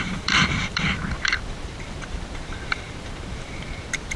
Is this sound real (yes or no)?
no